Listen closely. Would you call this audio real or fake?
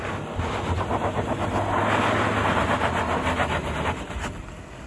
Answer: real